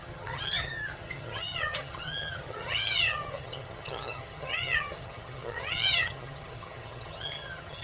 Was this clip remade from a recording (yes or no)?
yes